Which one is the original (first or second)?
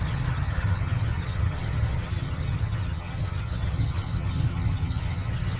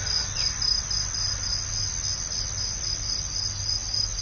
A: second